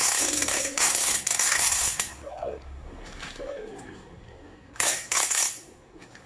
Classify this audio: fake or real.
fake